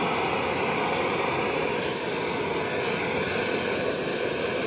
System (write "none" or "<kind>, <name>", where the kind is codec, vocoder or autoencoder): vocoder, BigVGAN v2